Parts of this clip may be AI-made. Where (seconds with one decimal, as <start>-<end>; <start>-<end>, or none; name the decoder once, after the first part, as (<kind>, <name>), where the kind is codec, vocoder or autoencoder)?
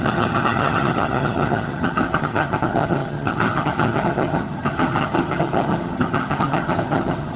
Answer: 0.0-7.4 (vocoder, HiFi-GAN)